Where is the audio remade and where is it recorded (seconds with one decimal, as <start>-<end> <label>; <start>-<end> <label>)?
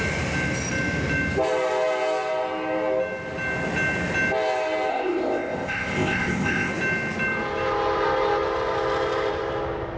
0.0-4.9 recorded; 4.9-6.7 remade; 6.7-10.0 recorded